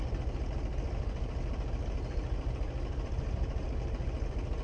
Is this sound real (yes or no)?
yes